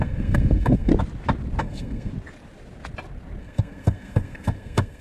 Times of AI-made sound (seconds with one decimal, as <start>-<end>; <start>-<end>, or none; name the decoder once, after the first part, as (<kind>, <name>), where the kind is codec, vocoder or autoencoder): 0.0-0.9 (codec, SNAC); 1.6-2.1; 3.4-5.0